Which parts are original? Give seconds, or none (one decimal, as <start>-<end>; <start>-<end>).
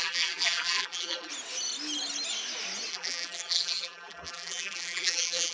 1.3-2.9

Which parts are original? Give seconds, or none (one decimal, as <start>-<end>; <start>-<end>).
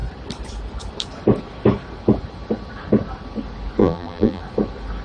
0.0-3.8; 4.4-5.0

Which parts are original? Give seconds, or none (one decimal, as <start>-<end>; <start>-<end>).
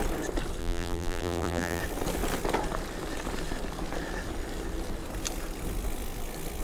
0.0-0.6; 1.8-6.6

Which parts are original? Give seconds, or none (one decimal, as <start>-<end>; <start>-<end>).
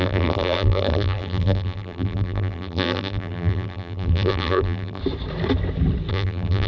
5.0-6.1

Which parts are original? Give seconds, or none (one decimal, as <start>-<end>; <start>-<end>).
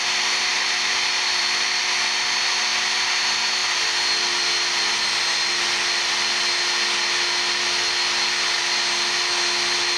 0.0-0.5; 1.8-2.7; 3.2-10.0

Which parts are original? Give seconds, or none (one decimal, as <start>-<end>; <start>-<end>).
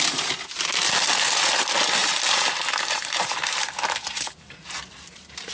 0.0-2.0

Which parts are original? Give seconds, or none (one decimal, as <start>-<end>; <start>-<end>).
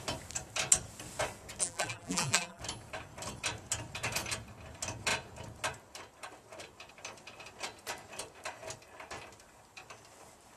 0.0-1.6; 2.6-10.6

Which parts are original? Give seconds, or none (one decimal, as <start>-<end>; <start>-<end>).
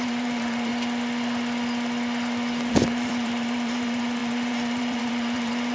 0.7-2.7